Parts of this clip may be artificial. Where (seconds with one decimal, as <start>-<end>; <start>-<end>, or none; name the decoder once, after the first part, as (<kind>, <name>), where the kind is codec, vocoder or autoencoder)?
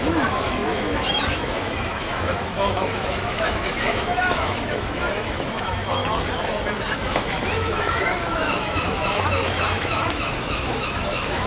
0.0-6.0 (autoencoder, DAC-VAE); 6.9-11.5